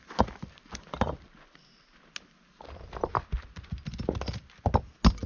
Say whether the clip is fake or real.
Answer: real